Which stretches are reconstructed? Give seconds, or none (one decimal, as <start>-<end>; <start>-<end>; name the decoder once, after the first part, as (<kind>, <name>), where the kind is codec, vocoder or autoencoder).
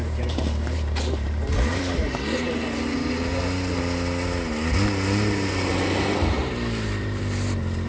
0.0-3.3 (vocoder, BigVGAN v2); 6.3-7.9